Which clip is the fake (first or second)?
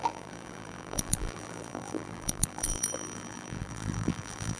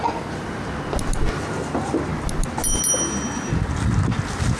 first